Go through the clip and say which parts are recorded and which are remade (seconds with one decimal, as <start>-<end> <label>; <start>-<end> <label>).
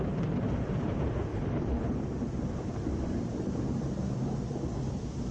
0.0-1.3 recorded; 1.3-2.0 remade; 2.0-5.3 recorded